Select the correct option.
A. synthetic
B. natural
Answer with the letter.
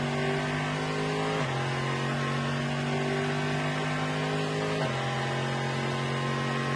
B